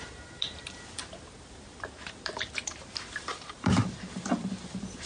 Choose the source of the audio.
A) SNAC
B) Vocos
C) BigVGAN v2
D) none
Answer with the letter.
C